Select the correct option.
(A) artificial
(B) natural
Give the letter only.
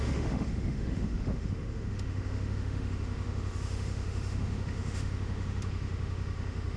A